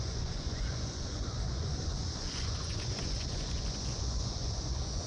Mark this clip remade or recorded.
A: remade